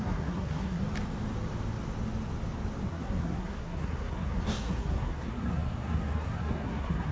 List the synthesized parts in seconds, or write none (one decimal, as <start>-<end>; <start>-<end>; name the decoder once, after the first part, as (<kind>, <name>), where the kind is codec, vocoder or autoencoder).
0.0-0.8 (codec, SNAC); 2.9-7.1